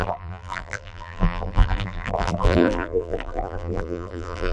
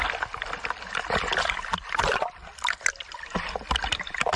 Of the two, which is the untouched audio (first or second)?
second